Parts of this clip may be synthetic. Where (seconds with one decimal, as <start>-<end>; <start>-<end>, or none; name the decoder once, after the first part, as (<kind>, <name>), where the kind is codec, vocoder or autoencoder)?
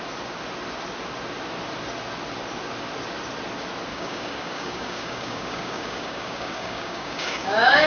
3.9-7.9 (codec, DAC)